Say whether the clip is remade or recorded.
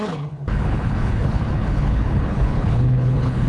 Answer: remade